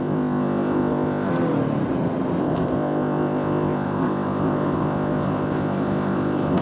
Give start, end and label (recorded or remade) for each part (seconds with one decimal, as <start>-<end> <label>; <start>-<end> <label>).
0.0-1.3 remade; 1.3-2.4 recorded; 2.4-6.6 remade